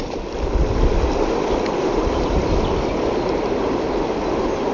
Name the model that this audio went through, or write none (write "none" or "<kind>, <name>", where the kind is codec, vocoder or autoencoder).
none